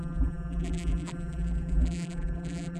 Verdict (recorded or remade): remade